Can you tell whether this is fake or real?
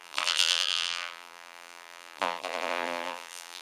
fake